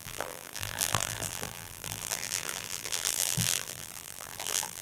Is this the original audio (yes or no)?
no